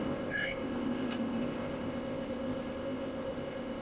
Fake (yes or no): yes